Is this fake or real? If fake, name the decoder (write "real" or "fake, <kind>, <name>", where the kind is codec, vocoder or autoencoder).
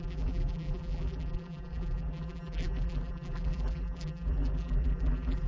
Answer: fake, vocoder, BigVGAN v2